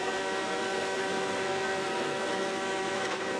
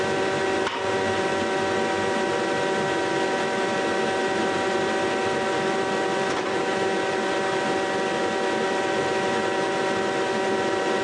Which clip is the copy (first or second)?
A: first